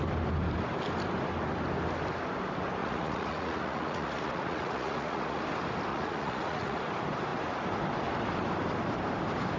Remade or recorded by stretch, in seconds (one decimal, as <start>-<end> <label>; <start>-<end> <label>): 0.0-2.8 recorded; 2.8-5.4 remade; 5.4-5.9 recorded; 5.9-6.8 remade; 6.8-9.6 recorded